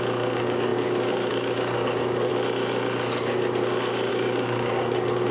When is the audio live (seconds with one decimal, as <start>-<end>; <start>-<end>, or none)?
2.3-4.1